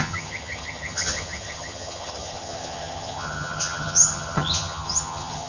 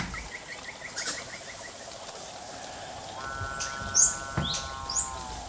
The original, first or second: second